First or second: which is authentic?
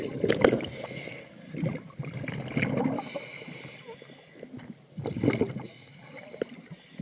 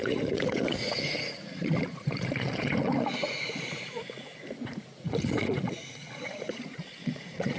first